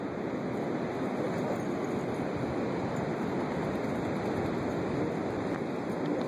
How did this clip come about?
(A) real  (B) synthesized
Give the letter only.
A